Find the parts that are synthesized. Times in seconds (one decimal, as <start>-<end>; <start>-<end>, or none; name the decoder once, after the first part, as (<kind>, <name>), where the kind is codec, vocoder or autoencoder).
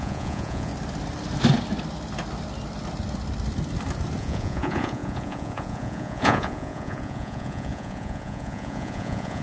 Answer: 0.0-0.7 (vocoder, Vocos); 4.2-9.4